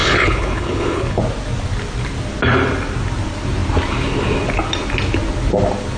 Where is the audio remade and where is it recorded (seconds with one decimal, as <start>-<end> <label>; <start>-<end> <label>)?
0.0-1.2 remade; 1.2-6.0 recorded